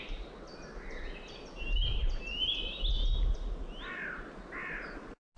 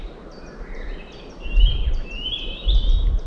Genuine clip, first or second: first